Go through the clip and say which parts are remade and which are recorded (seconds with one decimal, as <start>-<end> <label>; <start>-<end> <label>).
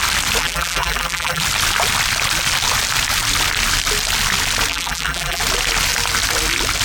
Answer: 0.0-0.4 recorded; 0.4-1.4 remade; 1.4-4.7 recorded; 4.7-5.4 remade; 5.4-6.8 recorded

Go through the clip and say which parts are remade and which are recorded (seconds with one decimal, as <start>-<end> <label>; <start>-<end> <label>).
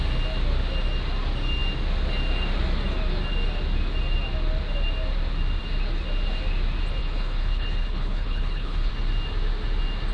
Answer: 0.0-7.0 recorded; 7.0-8.9 remade; 8.9-10.1 recorded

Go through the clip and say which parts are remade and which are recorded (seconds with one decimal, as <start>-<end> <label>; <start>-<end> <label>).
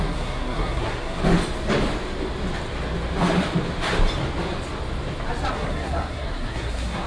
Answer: 0.0-1.2 remade; 1.2-5.5 recorded; 5.5-7.1 remade